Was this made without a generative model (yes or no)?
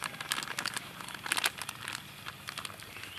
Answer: yes